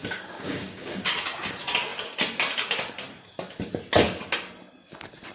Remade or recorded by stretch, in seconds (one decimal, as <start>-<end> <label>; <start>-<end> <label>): 0.0-1.2 remade; 1.2-5.3 recorded